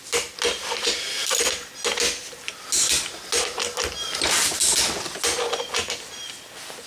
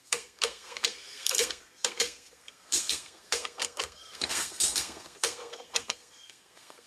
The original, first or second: first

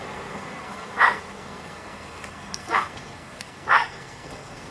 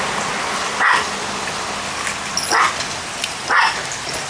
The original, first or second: second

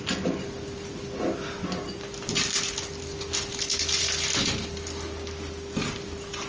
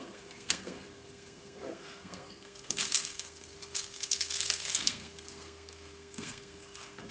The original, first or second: first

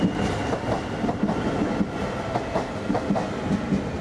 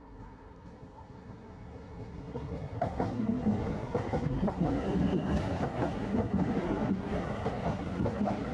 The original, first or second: first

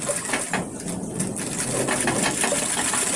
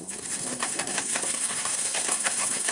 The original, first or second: first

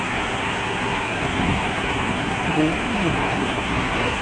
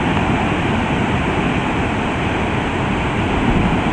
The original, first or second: second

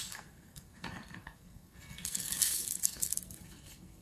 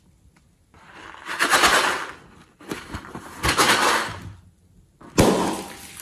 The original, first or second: second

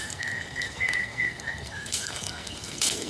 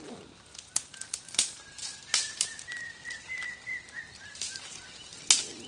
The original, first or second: second